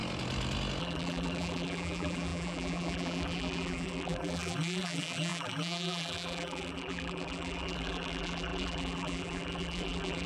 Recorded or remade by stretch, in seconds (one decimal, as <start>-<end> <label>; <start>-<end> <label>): 0.0-0.8 recorded; 0.8-10.3 remade

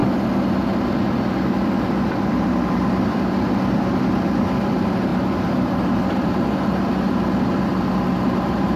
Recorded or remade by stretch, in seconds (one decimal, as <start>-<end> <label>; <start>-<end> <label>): 0.0-1.8 recorded; 1.8-8.8 remade

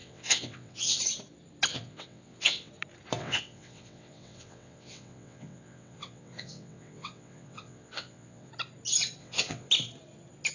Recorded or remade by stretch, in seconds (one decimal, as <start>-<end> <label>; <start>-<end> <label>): 0.0-1.0 remade; 1.0-1.7 recorded; 1.7-2.7 remade; 2.7-3.2 recorded; 3.2-8.5 remade; 8.5-9.2 recorded; 9.2-9.7 remade; 9.7-10.5 recorded

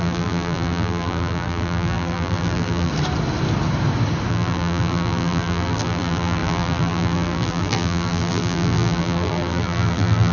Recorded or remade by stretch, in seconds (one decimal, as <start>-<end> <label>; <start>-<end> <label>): 0.0-2.9 remade; 2.9-4.3 recorded; 4.3-10.3 remade

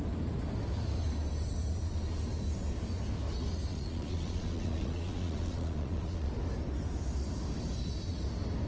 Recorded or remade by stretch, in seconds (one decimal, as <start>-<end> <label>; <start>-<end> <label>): 0.0-3.7 recorded; 3.7-6.3 remade; 6.3-8.7 recorded

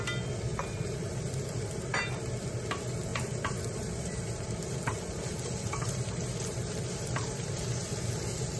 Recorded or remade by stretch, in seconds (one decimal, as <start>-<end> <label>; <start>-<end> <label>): 0.0-0.5 recorded; 0.5-1.7 remade; 1.7-3.1 recorded; 3.1-7.5 remade; 7.5-8.6 recorded

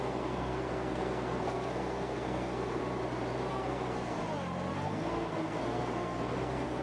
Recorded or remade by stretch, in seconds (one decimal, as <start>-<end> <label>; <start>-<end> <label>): 0.0-2.8 remade; 2.8-3.5 recorded; 3.5-4.2 remade; 4.2-4.7 recorded; 4.7-6.8 remade